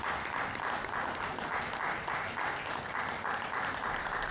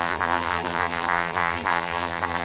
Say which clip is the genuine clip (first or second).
first